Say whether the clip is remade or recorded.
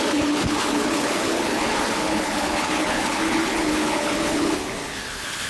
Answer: remade